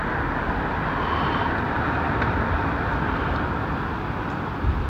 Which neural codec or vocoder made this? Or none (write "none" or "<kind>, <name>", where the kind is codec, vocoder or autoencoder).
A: none